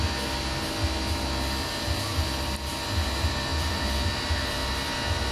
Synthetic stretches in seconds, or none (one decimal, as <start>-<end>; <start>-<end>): 2.1-2.7; 3.5-4.1